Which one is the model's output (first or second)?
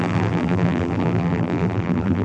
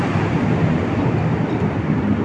first